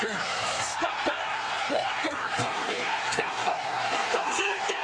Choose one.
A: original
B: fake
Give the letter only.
B